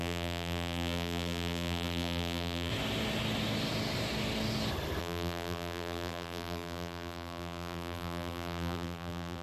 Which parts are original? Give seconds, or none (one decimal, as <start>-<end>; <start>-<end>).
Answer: 2.7-5.0